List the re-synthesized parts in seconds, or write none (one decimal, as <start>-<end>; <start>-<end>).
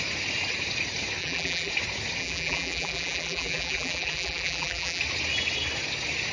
1.2-1.7; 2.2-5.0